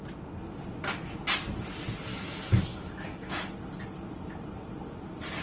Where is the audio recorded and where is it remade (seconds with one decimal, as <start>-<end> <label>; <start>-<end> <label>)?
0.0-2.1 recorded; 2.1-3.5 remade; 3.5-5.4 recorded